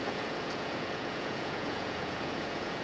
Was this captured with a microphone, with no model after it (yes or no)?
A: no